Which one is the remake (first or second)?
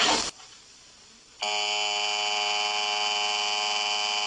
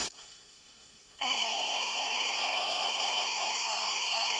second